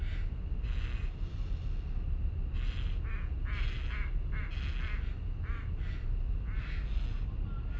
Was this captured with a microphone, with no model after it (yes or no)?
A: yes